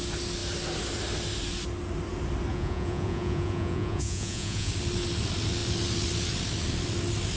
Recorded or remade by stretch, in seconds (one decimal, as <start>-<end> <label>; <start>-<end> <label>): 0.0-2.5 recorded; 2.5-4.7 remade; 4.7-7.4 recorded